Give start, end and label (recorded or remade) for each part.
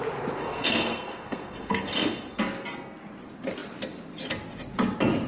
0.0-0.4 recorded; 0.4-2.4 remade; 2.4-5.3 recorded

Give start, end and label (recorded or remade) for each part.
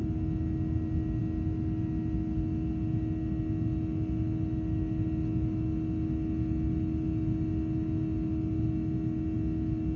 0.0-10.0 recorded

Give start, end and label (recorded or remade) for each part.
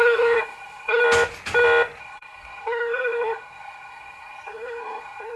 0.0-1.0 remade; 1.0-2.0 recorded; 2.0-5.4 remade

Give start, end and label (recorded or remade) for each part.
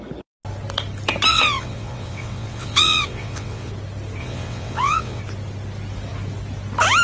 0.0-1.3 recorded; 1.3-3.7 remade; 3.7-4.2 recorded; 4.2-5.2 remade; 5.2-7.0 recorded